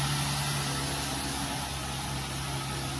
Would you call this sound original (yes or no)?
yes